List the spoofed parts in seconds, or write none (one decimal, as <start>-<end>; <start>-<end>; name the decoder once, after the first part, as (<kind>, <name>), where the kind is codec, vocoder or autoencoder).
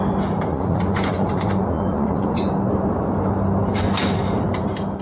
0.5-2.5 (vocoder, Vocos)